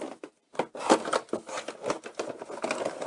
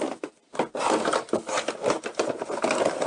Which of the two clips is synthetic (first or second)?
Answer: second